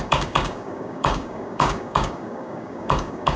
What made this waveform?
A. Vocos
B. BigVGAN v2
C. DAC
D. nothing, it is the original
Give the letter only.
C